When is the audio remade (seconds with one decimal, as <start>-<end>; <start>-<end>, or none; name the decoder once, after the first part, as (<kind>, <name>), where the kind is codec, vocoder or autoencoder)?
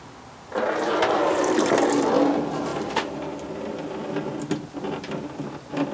0.5-1.7 (vocoder, BigVGAN v2)